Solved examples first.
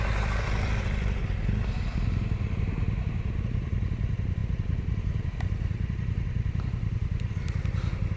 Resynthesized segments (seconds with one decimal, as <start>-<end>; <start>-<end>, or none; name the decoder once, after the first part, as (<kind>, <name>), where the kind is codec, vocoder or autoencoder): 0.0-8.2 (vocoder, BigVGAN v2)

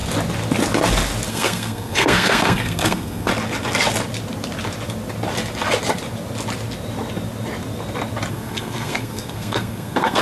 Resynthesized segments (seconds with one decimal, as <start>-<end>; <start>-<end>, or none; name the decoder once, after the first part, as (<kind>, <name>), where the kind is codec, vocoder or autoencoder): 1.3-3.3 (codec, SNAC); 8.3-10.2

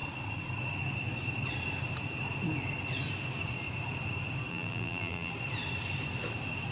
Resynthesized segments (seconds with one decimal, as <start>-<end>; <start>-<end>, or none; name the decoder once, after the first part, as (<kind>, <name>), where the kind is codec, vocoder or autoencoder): 4.5-5.3 (vocoder, BigVGAN v2)

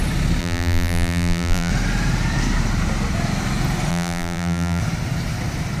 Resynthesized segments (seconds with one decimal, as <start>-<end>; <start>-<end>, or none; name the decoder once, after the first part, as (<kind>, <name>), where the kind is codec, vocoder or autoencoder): 0.4-1.7 (vocoder, BigVGAN v2); 3.9-4.8

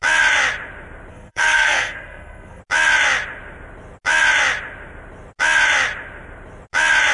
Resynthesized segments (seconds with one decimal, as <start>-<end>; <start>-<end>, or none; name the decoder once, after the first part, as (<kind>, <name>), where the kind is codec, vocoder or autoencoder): 1.1-2.6 (codec, SNAC)

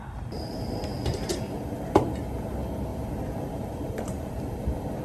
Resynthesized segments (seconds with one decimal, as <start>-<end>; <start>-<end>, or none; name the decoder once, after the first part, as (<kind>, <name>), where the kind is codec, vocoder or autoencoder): 0.0-2.3 (vocoder, BigVGAN v2); 2.9-4.5

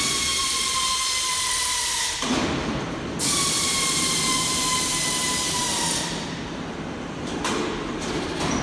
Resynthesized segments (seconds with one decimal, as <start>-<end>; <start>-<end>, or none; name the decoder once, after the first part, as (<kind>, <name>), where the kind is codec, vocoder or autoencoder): 0.4-5.6 (vocoder, BigVGAN v2)

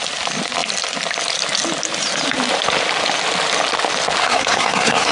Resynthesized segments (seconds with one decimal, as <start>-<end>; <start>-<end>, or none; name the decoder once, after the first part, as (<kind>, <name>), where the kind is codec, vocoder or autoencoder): 4.2-5.1 (codec, SNAC)